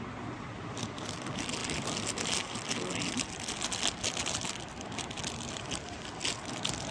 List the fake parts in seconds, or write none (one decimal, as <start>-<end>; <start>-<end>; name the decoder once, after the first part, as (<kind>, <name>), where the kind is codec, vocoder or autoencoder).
none